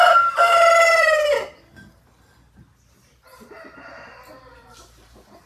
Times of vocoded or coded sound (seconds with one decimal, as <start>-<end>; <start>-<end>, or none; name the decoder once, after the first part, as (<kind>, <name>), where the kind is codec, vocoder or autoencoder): none